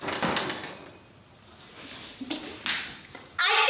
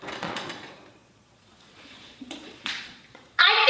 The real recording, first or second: first